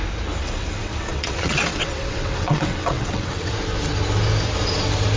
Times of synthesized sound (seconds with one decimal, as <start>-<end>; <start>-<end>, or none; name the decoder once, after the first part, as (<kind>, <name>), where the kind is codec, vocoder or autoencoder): 0.4-3.5 (vocoder, WaveNeXt)